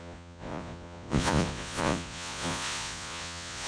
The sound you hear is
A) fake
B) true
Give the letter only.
A